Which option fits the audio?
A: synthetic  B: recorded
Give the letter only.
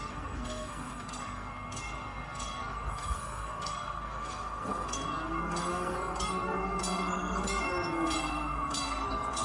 A